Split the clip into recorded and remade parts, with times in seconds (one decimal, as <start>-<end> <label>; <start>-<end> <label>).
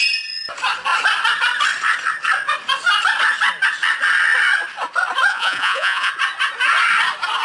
0.0-5.3 recorded; 5.3-6.1 remade; 6.1-7.4 recorded